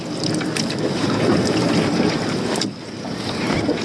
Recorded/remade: recorded